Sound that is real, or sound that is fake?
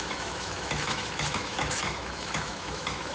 fake